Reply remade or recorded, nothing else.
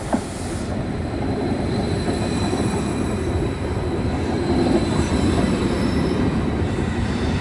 remade